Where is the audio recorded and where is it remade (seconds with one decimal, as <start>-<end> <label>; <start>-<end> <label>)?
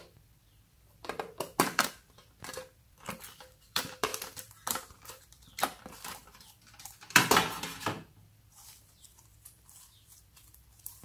0.0-11.0 remade